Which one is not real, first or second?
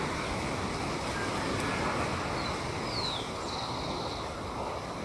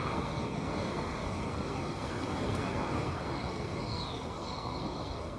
second